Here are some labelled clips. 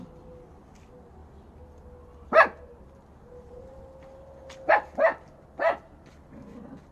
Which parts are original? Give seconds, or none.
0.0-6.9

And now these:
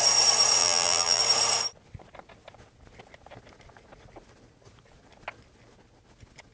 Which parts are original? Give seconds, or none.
0.0-0.6; 1.2-6.5

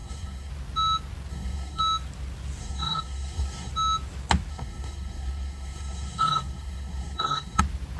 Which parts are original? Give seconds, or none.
0.5-1.3; 1.8-2.6; 3.7-4.5; 7.6-8.0

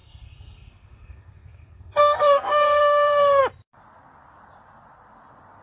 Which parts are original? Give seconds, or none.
3.4-5.6

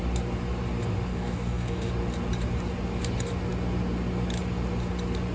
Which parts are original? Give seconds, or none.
0.0-1.1; 1.9-5.3

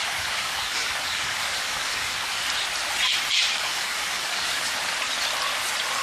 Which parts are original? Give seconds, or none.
2.4-3.5; 4.7-6.0